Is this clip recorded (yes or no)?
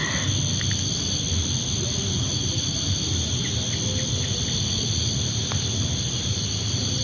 yes